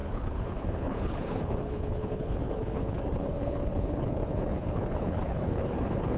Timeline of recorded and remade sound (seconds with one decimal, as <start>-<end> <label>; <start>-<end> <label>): 0.0-6.2 remade